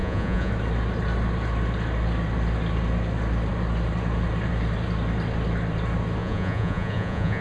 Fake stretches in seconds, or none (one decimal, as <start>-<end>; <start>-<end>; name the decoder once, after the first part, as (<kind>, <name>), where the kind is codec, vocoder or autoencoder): 0.0-0.5 (vocoder, Vocos); 6.2-7.4